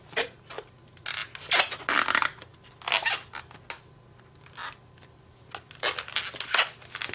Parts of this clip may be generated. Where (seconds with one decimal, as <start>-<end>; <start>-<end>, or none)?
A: 1.2-1.9